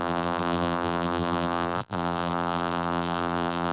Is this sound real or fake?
fake